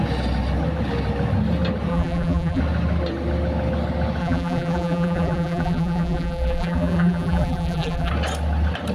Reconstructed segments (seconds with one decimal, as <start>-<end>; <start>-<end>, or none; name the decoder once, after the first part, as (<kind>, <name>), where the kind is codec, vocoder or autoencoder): 1.9-2.6 (vocoder, BigVGAN v2); 4.2-8.1